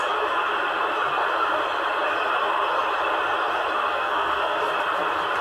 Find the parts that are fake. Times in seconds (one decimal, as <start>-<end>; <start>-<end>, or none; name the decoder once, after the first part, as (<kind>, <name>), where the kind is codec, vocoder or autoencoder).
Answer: 3.9-4.6 (codec, SNAC)